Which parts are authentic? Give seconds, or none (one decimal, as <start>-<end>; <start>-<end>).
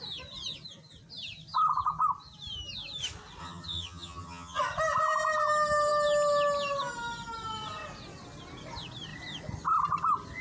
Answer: 0.0-3.4; 4.6-10.4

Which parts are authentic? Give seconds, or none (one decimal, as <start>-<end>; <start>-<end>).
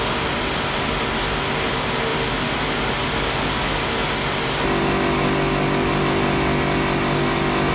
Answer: 0.0-7.7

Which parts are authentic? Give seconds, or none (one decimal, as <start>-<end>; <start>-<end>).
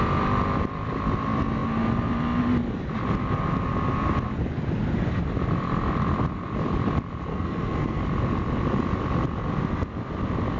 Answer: 0.0-7.3; 8.0-10.6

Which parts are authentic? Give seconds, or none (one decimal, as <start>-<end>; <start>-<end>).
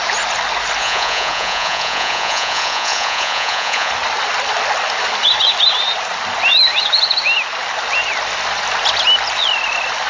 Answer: 0.0-0.8; 3.9-10.1